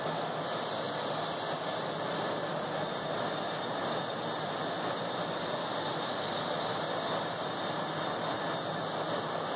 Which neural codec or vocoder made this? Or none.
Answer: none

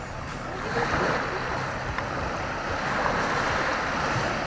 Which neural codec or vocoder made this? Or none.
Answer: none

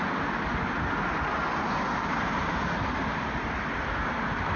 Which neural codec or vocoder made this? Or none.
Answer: none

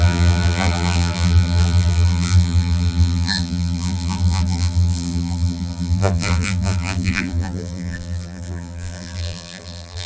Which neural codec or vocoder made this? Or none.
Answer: vocoder, BigVGAN v2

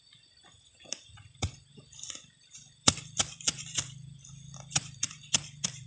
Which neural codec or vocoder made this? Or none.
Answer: none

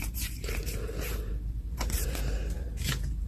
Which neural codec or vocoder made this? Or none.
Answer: vocoder, BigVGAN v2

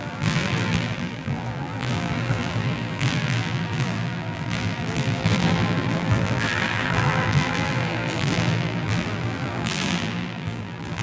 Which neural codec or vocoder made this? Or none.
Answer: vocoder, BigVGAN v2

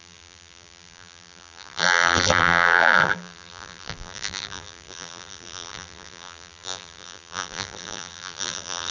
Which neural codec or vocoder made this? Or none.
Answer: vocoder, BigVGAN v2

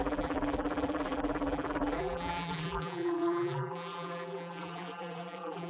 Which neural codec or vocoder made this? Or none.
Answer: vocoder, BigVGAN v2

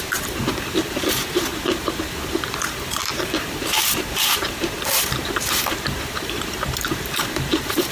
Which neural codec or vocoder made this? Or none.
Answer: vocoder, BigVGAN v2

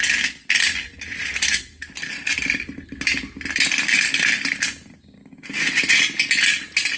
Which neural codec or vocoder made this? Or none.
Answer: none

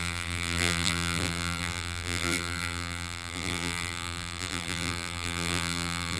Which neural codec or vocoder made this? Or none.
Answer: vocoder, BigVGAN v2